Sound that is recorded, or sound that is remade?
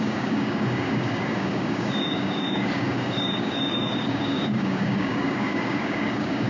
remade